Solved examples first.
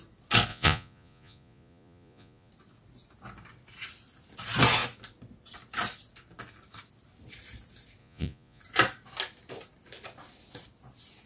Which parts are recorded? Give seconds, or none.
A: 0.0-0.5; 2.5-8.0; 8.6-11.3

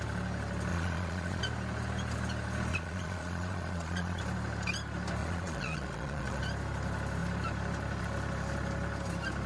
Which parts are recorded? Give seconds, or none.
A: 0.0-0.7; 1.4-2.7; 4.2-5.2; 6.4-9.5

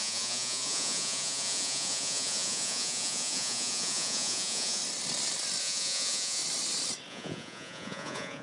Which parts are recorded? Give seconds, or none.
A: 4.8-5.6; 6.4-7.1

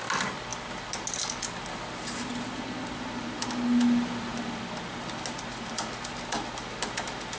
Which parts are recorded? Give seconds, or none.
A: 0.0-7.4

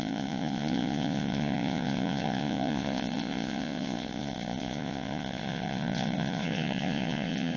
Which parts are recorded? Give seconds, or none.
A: none